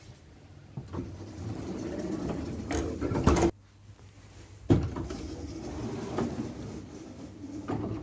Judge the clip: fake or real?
real